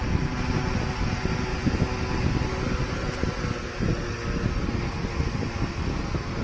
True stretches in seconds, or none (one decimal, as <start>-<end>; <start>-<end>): 0.0-6.4